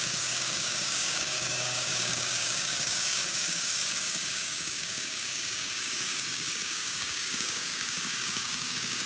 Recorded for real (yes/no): no